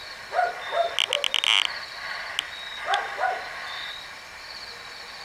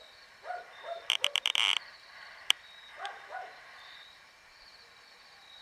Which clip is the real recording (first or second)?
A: first